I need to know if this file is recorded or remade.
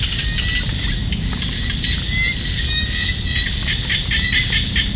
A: recorded